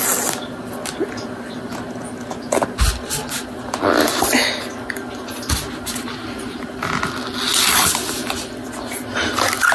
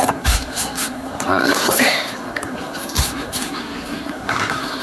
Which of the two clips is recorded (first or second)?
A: first